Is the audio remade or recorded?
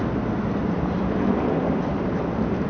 recorded